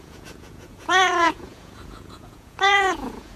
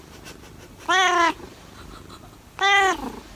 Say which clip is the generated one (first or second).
first